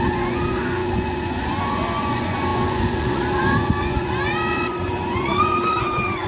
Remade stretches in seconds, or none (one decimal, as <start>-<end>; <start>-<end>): 0.0-6.3